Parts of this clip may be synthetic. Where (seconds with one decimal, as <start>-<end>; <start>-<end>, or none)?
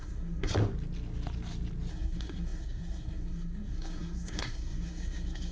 0.0-0.5; 1.9-5.5